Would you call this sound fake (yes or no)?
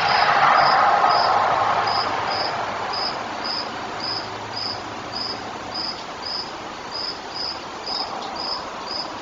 yes